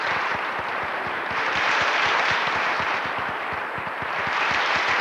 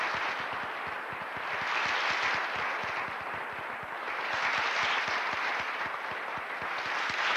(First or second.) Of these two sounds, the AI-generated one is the first